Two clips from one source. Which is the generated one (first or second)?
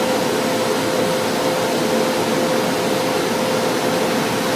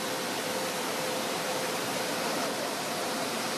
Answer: second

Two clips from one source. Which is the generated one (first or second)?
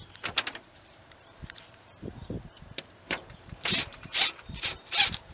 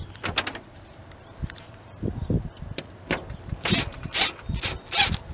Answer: first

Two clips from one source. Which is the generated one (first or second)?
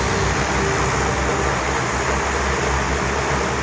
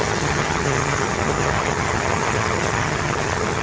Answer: second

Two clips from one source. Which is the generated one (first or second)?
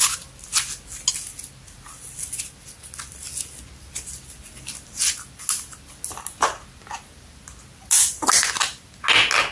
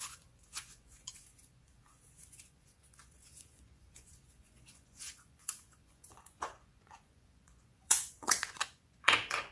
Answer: second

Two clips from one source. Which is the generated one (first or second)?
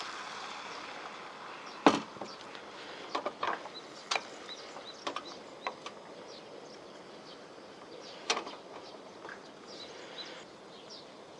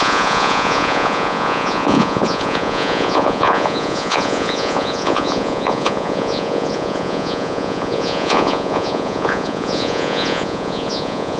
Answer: second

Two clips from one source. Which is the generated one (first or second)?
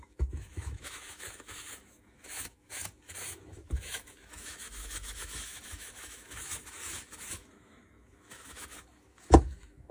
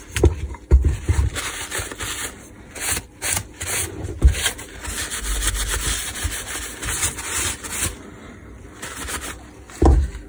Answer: first